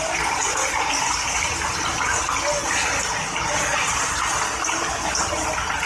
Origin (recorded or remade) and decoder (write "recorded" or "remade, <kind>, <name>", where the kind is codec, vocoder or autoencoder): recorded